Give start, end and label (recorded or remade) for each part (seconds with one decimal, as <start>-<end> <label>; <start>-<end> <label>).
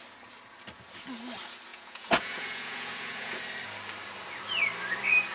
0.0-1.7 recorded; 1.7-3.3 remade; 3.3-5.3 recorded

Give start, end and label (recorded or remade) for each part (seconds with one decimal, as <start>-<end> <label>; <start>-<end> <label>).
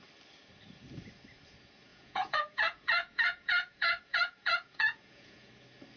0.0-1.9 recorded; 1.9-5.5 remade; 5.5-6.0 recorded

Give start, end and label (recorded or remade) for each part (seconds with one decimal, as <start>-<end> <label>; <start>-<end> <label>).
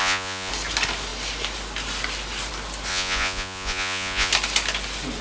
0.0-0.5 remade; 0.5-2.9 recorded; 2.9-4.3 remade; 4.3-5.2 recorded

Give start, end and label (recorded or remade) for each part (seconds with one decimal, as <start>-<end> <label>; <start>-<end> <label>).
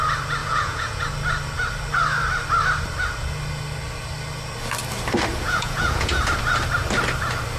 0.0-0.4 recorded; 0.4-1.0 remade; 1.0-5.3 recorded; 5.3-6.2 remade; 6.2-7.6 recorded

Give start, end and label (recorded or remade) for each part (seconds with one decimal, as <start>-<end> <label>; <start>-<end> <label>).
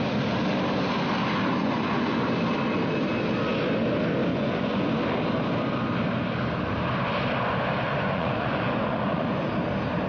0.0-1.6 recorded; 1.6-2.3 remade; 2.3-4.3 recorded; 4.3-4.9 remade; 4.9-7.9 recorded; 7.9-9.5 remade; 9.5-10.1 recorded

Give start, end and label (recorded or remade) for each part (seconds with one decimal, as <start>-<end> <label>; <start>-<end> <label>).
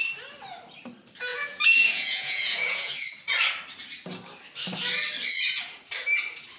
0.0-1.3 recorded; 1.3-2.9 remade; 2.9-6.6 recorded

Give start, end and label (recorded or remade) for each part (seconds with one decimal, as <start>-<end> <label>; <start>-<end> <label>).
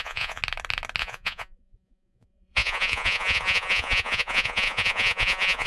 0.0-0.4 remade; 0.4-1.0 recorded; 1.0-5.7 remade